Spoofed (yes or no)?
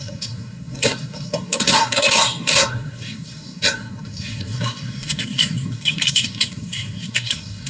yes